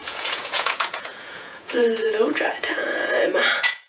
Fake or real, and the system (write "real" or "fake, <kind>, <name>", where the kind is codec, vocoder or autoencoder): fake, vocoder, Vocos